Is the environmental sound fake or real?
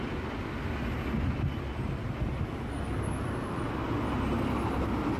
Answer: real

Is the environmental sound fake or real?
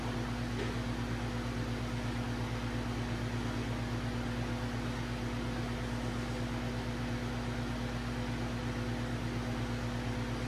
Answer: real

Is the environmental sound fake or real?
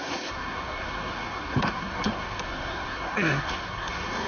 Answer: fake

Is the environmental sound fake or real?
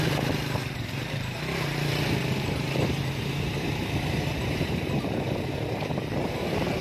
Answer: fake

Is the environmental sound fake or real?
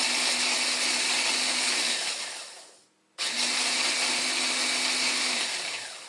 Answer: real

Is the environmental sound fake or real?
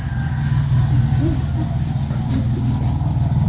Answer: real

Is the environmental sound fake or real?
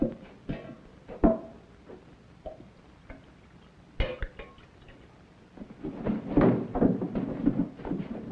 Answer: real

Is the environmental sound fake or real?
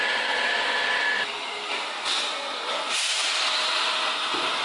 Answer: real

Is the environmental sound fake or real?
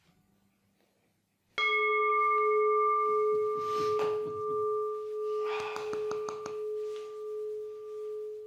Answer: real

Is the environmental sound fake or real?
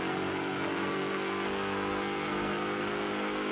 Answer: fake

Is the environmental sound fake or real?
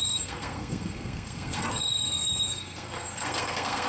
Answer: fake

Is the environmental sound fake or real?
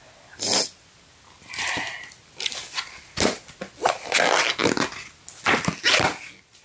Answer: real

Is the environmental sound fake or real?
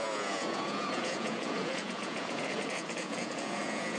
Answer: fake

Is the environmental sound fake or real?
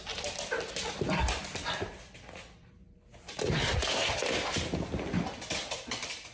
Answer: real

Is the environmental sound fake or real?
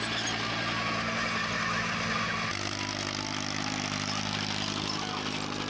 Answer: real